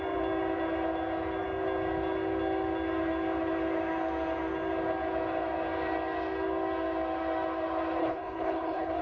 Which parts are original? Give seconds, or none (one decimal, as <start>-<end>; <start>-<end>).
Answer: 0.0-8.0